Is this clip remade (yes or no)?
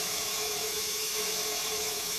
yes